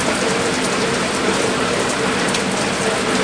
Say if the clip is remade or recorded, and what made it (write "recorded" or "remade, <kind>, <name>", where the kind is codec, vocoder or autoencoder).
remade, vocoder, BigVGAN v2